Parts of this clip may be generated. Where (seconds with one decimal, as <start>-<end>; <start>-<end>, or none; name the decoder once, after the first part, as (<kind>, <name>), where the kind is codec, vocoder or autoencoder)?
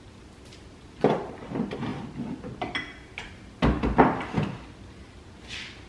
none